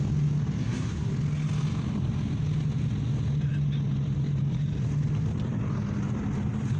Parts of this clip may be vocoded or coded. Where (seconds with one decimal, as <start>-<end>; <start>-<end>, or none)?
0.6-1.1